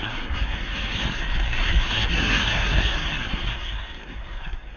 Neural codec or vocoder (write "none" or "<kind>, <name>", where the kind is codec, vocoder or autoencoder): codec, SNAC